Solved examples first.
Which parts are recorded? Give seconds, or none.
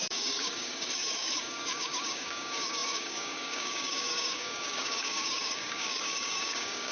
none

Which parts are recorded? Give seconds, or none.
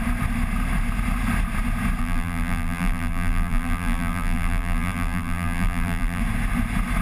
0.0-2.0; 6.2-7.0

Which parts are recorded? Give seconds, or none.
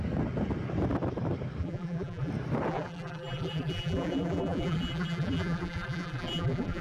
0.0-1.6; 2.3-2.7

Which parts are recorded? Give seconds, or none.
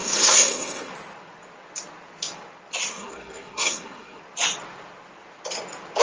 0.9-2.9; 4.2-6.0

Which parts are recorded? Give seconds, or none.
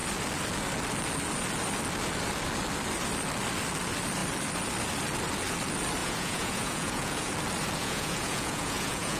0.0-6.0; 7.3-7.8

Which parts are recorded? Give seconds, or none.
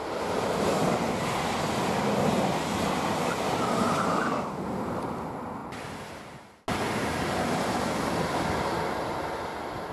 0.0-5.6; 6.2-7.0; 8.7-9.9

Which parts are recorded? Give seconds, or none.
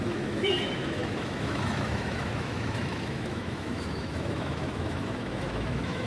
none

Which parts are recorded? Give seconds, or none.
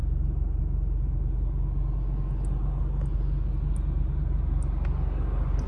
0.0-5.7